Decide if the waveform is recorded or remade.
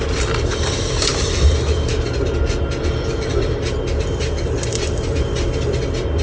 remade